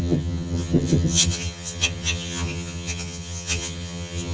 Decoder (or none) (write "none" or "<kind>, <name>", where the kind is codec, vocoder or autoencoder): vocoder, HiFi-GAN